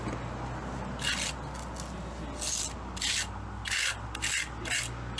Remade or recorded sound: recorded